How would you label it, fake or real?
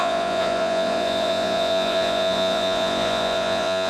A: fake